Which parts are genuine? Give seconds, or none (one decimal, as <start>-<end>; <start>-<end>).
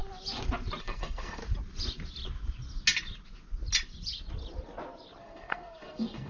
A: 0.0-0.8; 1.4-5.2